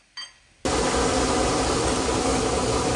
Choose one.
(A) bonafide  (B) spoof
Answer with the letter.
A